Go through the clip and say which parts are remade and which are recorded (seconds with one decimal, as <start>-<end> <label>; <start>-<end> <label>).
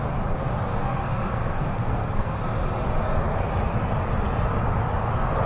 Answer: 0.0-1.0 recorded; 1.0-2.4 remade; 2.4-5.5 recorded